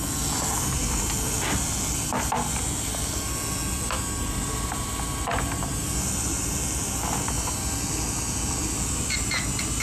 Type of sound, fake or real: real